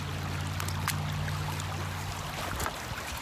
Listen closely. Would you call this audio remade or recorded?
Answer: recorded